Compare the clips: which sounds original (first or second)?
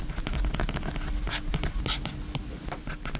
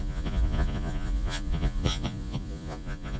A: first